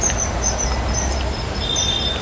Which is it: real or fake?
real